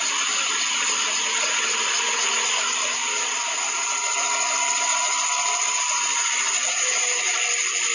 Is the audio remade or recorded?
recorded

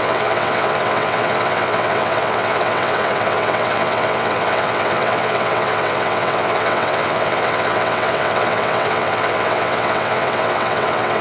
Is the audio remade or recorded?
remade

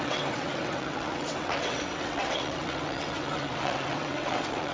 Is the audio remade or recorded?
remade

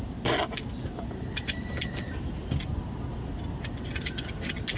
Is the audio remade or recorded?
recorded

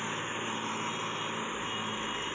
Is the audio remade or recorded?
recorded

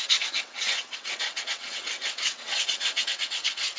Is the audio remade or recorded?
remade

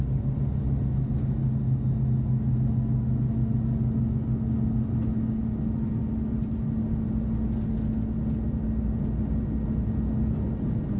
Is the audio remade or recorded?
recorded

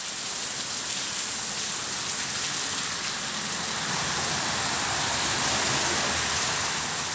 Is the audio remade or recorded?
recorded